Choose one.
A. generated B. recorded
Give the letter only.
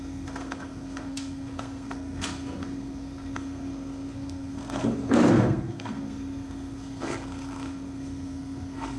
A